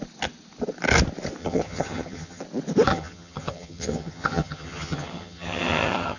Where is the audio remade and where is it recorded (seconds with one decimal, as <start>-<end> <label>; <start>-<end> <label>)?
0.0-1.4 recorded; 1.4-2.4 remade; 2.4-2.9 recorded; 2.9-6.2 remade